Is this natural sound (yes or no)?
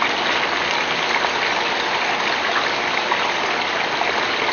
yes